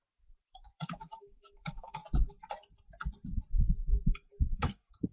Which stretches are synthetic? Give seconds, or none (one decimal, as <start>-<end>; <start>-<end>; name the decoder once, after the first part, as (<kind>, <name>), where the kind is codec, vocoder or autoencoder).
0.0-2.0 (autoencoder, DAC-VAE); 3.5-5.1